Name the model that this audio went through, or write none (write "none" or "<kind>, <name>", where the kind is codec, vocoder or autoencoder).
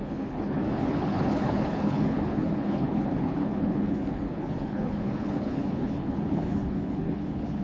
codec, HILCodec